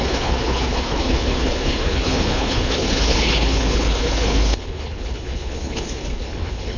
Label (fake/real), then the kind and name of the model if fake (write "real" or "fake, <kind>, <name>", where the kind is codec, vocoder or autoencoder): fake, codec, HILCodec